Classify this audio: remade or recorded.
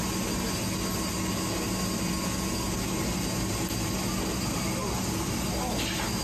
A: recorded